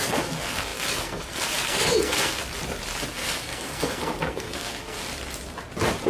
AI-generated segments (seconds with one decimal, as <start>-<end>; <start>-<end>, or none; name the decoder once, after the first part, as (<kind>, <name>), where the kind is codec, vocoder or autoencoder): 0.0-2.4 (codec, SNAC); 3.1-5.0